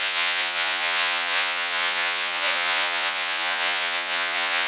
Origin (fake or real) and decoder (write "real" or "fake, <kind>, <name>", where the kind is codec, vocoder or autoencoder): fake, vocoder, Vocos